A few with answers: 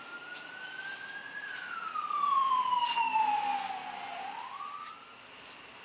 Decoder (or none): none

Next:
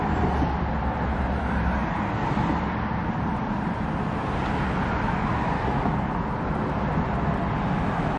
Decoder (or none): none